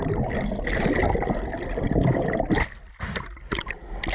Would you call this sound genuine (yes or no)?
yes